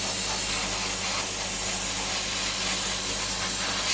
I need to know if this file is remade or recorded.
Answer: recorded